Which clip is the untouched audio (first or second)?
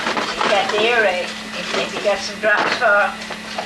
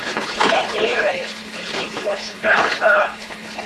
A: first